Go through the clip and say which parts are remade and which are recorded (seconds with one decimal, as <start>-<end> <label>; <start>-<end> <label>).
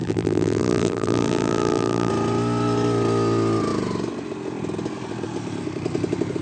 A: 0.0-2.1 remade; 2.1-6.4 recorded